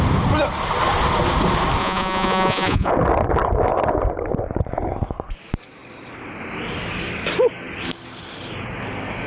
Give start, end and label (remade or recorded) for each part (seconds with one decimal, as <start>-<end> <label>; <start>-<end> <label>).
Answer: 0.0-1.8 recorded; 1.8-2.9 remade; 2.9-9.3 recorded

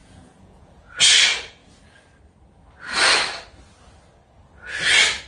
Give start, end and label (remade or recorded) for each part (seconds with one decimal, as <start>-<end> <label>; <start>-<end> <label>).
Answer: 0.0-1.1 remade; 1.1-5.3 recorded

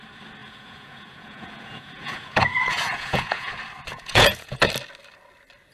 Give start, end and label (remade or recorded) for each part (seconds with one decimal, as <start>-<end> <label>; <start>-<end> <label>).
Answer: 0.0-0.4 recorded; 0.4-3.5 remade; 3.5-3.9 recorded; 3.9-4.7 remade; 4.7-5.7 recorded

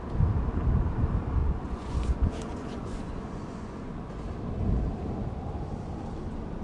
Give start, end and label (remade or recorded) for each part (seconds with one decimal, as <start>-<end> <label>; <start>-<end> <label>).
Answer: 0.0-1.4 recorded; 1.4-4.2 remade; 4.2-6.6 recorded

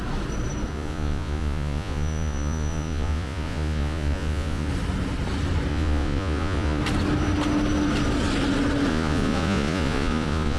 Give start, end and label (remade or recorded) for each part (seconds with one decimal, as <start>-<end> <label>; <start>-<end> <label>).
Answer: 0.0-0.7 recorded; 0.7-4.7 remade; 4.7-5.7 recorded; 5.7-6.8 remade; 6.8-8.9 recorded; 8.9-10.6 remade

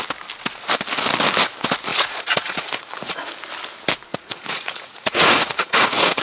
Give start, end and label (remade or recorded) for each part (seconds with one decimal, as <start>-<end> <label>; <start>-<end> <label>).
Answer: 0.0-1.9 recorded; 1.9-3.3 remade; 3.3-4.1 recorded; 4.1-6.2 remade

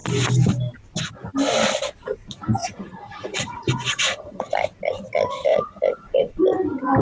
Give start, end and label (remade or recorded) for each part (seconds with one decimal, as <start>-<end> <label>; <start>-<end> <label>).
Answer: 0.0-2.6 recorded; 2.6-4.4 remade; 4.4-5.5 recorded; 5.5-6.4 remade; 6.4-7.0 recorded

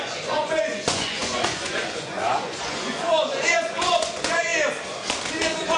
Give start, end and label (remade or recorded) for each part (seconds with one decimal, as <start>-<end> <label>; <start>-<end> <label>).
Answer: 0.0-4.5 remade; 4.5-5.3 recorded; 5.3-5.8 remade